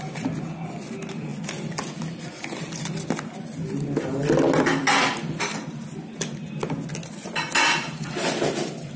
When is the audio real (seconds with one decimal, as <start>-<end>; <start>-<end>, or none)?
0.0-9.0